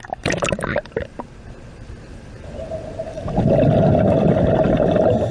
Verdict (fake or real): real